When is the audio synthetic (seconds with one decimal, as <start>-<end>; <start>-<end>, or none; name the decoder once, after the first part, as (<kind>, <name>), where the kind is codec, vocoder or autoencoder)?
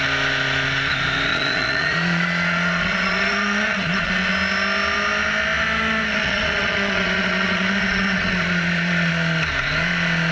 1.3-4.1 (vocoder, Vocos); 6.2-9.1